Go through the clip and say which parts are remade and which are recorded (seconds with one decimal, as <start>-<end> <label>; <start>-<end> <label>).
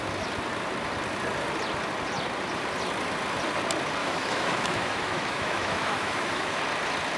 0.0-4.0 recorded; 4.0-6.6 remade; 6.6-7.2 recorded